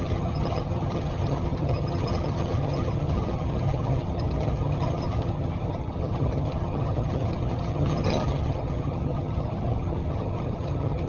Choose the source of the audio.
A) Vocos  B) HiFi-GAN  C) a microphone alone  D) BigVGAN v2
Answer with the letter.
B